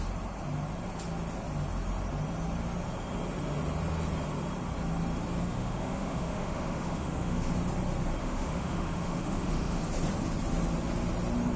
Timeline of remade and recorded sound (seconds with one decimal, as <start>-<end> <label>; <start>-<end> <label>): 0.0-5.4 recorded; 5.4-7.5 remade; 7.5-8.2 recorded; 8.2-9.8 remade; 9.8-11.6 recorded